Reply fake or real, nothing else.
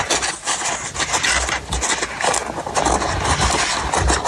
real